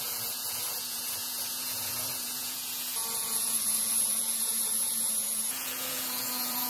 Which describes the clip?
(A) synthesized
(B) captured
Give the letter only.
A